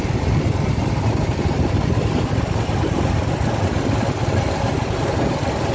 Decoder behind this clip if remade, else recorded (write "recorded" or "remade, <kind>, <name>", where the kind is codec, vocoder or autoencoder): recorded